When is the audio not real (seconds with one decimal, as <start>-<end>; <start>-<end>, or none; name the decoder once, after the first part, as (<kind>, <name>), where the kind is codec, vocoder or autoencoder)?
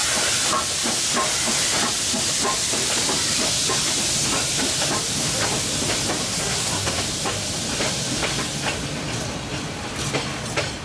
6.2-7.0 (codec, SNAC)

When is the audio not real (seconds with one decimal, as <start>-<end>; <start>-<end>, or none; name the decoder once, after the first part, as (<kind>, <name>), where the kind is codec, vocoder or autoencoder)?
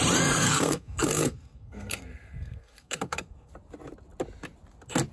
0.4-3.5 (codec, SNAC)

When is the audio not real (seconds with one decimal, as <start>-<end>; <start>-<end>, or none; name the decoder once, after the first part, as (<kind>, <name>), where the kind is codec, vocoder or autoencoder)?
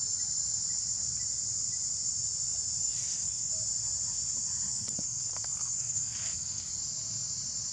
2.8-3.5 (codec, SNAC); 4.7-6.8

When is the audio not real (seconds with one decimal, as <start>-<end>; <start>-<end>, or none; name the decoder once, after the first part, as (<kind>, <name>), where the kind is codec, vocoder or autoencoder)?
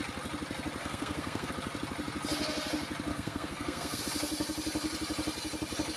0.8-1.5 (codec, SNAC); 3.1-4.0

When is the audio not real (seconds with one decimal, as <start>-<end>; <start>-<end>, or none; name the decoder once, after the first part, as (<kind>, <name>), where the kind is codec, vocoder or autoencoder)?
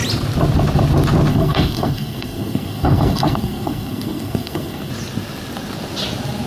1.3-4.9 (codec, SNAC)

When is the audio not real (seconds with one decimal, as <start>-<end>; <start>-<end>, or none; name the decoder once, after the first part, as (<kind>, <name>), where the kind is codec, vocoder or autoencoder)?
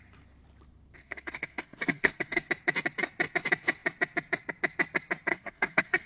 1.0-2.5 (codec, SNAC); 5.3-6.1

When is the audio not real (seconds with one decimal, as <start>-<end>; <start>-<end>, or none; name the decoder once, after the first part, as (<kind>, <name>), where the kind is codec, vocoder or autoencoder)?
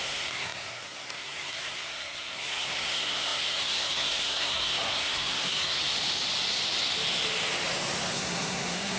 0.0-5.8 (codec, SNAC); 8.1-9.0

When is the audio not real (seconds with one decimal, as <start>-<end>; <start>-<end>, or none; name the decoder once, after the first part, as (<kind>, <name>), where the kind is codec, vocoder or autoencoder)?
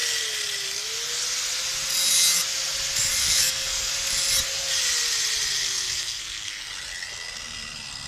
3.2-3.9 (codec, SNAC); 5.6-6.7